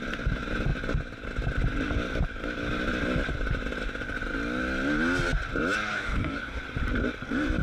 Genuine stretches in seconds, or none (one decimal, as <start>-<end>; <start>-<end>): 0.0-5.9; 6.6-7.6